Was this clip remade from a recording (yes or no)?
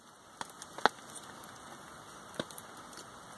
no